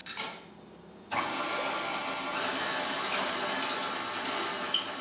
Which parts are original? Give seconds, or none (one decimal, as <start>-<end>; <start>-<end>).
0.0-5.0